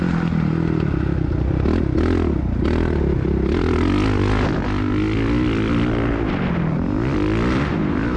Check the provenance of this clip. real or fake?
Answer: real